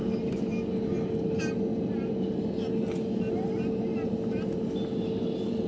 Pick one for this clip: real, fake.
real